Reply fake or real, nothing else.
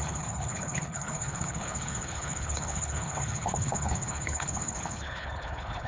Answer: fake